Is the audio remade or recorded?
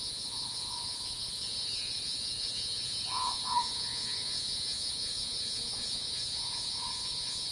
remade